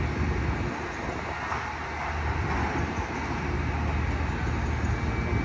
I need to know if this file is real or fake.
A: real